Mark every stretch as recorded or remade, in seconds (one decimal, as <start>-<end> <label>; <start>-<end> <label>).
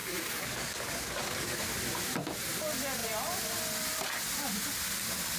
0.0-1.6 remade; 1.6-5.4 recorded